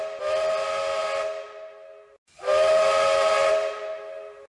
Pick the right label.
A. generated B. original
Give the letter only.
B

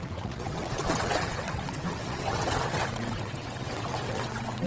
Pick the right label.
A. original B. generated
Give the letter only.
B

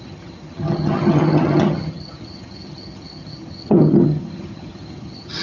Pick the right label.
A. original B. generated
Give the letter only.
B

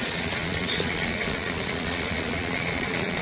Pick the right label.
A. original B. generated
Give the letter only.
B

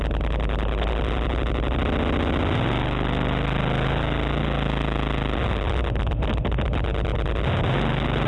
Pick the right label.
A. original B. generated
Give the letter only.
A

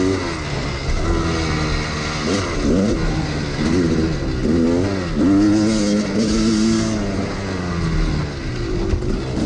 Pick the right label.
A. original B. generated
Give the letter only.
A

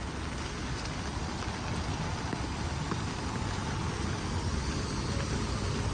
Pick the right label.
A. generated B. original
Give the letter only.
B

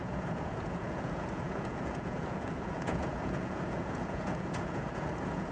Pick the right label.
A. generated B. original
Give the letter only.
A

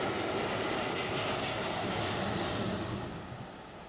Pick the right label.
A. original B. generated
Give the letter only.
A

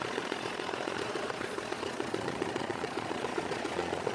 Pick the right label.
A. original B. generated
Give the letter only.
B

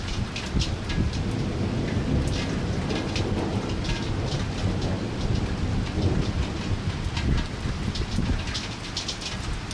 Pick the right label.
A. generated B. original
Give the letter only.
B